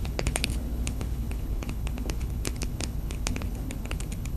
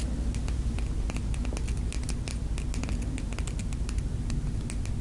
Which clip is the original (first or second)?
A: second